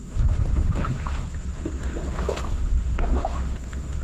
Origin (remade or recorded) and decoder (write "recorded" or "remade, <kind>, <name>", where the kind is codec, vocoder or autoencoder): remade, autoencoder, DAC-VAE